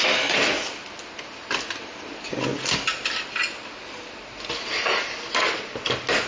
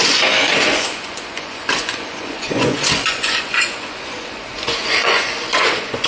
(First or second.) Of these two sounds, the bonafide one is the first